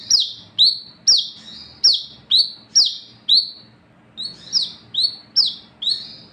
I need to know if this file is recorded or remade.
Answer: recorded